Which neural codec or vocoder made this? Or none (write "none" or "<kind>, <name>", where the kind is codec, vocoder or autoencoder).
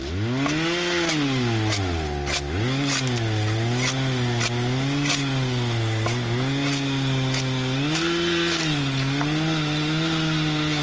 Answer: none